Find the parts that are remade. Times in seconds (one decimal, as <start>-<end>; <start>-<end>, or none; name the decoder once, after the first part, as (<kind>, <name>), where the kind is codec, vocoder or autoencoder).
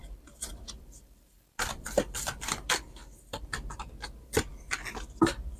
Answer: 0.0-3.4 (vocoder, BigVGAN v2)